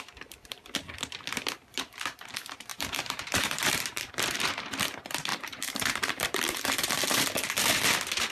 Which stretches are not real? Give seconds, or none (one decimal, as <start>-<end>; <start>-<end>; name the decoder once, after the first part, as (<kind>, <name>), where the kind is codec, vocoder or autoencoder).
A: 2.7-4.1 (vocoder, BigVGAN v2); 5.3-6.9